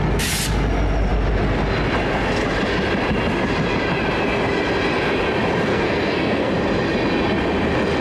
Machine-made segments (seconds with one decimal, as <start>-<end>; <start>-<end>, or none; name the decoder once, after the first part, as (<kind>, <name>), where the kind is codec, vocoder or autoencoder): 5.7-6.5 (codec, SNAC)